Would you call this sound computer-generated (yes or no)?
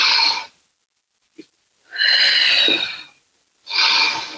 no